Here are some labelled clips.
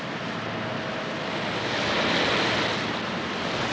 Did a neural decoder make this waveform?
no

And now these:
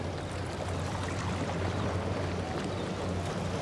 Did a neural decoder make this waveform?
no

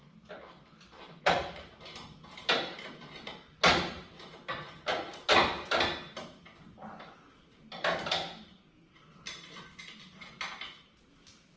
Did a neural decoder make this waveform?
no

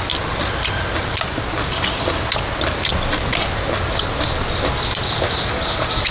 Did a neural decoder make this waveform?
no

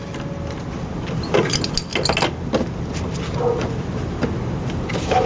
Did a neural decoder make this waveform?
no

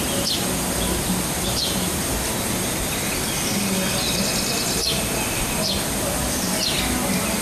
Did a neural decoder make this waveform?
no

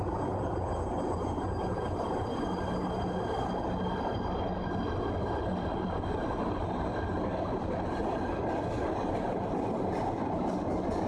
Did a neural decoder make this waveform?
no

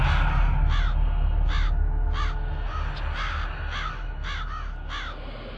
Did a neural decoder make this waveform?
no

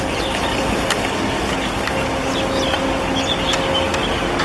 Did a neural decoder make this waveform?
no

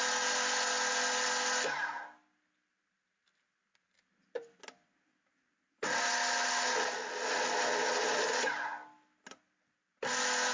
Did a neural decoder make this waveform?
no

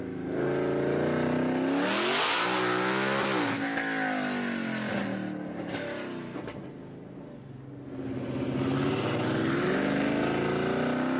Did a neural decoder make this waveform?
no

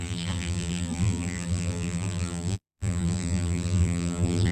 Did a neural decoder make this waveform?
yes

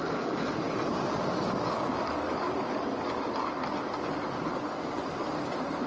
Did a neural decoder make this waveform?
no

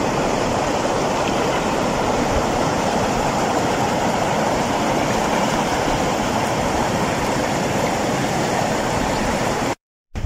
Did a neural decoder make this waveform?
yes